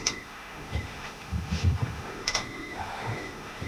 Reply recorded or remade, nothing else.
remade